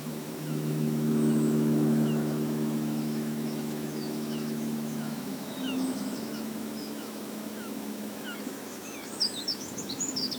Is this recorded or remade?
remade